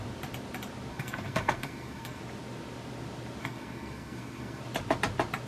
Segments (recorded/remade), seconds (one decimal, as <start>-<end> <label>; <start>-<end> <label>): 0.0-0.9 recorded; 0.9-2.2 remade; 2.2-3.4 recorded; 3.4-4.6 remade; 4.6-5.5 recorded